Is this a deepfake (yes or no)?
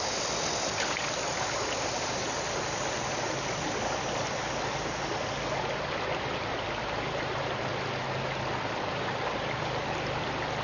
no